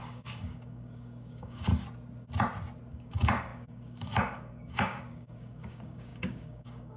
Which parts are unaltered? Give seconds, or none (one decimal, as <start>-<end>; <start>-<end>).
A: 1.7-2.9